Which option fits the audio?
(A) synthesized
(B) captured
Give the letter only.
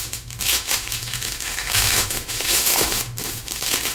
A